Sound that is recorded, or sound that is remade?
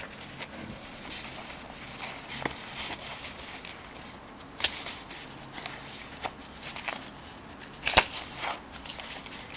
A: recorded